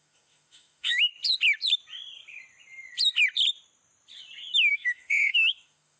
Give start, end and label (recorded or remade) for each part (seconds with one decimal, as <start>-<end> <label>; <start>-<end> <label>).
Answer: 0.0-1.1 remade; 1.1-4.7 recorded; 4.7-6.0 remade